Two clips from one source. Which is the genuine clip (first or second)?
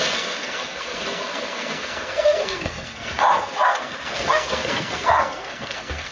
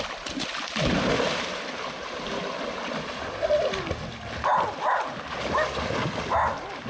second